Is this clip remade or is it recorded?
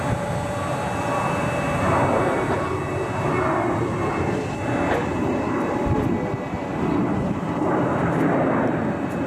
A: recorded